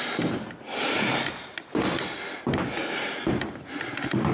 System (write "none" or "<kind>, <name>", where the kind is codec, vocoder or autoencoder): none